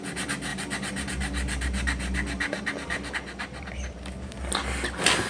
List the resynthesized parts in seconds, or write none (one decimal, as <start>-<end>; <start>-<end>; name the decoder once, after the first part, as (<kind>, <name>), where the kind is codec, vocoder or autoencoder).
0.5-3.7 (vocoder, BigVGAN v2)

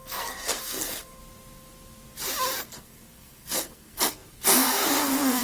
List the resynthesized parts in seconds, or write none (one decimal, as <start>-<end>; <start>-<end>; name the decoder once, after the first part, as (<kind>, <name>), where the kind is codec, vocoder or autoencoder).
0.0-1.2 (codec, SNAC); 2.6-5.4

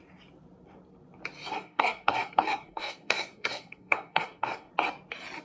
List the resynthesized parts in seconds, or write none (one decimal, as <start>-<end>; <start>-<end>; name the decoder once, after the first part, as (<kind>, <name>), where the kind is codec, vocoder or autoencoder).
1.5-4.7 (codec, SNAC)

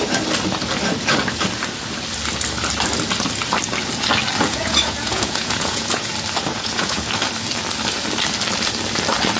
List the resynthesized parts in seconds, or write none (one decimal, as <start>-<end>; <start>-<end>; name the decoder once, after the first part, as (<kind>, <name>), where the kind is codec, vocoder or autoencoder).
4.5-6.1 (vocoder, Vocos); 6.5-7.0

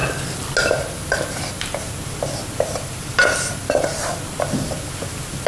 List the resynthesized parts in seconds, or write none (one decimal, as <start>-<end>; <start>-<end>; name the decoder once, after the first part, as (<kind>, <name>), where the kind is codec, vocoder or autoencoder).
none

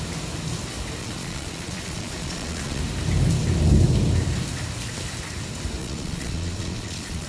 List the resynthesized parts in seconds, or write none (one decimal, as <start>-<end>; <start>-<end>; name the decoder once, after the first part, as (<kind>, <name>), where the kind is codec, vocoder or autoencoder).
1.0-2.8 (vocoder, Vocos); 5.8-7.3

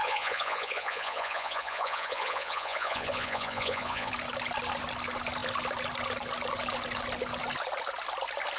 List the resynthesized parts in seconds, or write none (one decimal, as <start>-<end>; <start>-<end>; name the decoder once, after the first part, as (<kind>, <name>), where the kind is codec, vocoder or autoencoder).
0.0-4.1 (vocoder, Vocos)